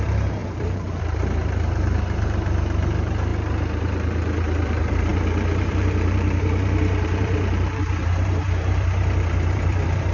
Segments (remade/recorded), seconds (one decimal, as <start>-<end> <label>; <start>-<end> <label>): 0.0-3.3 remade; 3.3-3.8 recorded; 3.8-10.1 remade